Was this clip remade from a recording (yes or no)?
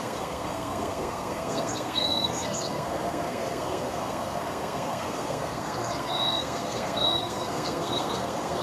yes